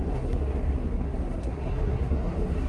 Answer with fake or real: fake